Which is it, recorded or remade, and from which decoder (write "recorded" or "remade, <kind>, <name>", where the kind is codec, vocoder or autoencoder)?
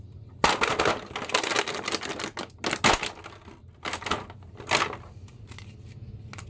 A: recorded